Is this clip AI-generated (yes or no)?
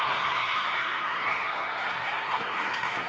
yes